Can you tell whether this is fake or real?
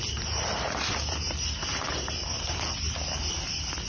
real